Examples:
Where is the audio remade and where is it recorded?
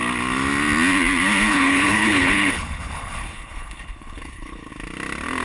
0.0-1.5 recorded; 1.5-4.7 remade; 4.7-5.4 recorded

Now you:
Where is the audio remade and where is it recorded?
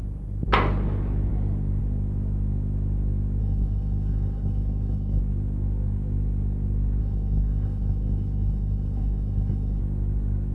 0.0-3.4 recorded; 3.4-5.2 remade; 5.2-7.0 recorded; 7.0-9.8 remade; 9.8-10.5 recorded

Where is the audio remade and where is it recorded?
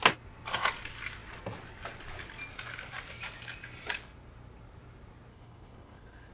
0.0-5.3 recorded; 5.3-6.3 remade